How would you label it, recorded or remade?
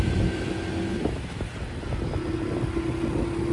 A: recorded